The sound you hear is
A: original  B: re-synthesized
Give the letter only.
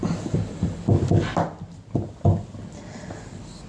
A